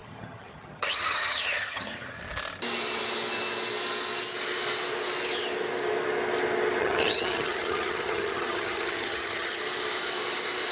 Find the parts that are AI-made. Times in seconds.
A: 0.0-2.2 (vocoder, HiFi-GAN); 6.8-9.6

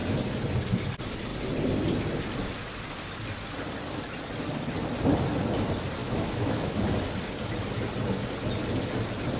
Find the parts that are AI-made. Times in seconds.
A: 6.0-6.9 (autoencoder, DAC-VAE)

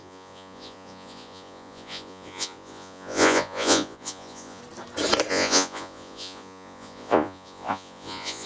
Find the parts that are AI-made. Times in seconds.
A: 0.0-4.6 (vocoder, Vocos); 5.3-8.5

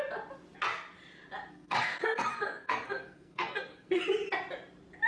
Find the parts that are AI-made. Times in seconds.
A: 1.5-4.0 (codec, SNAC)